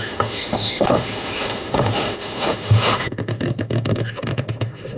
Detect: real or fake fake